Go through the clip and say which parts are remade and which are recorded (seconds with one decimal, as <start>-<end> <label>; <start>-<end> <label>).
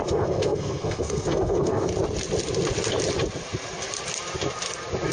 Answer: 0.0-1.9 remade; 1.9-5.1 recorded